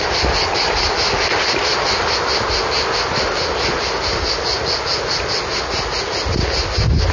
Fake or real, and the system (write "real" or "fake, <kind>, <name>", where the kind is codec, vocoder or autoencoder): real